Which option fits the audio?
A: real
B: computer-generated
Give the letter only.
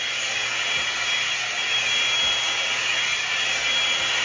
A